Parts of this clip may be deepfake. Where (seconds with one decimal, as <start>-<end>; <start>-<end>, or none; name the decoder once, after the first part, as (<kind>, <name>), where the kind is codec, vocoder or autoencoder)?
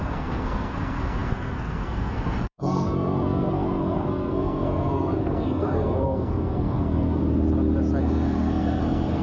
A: 0.0-7.2 (codec, SNAC); 8.0-9.2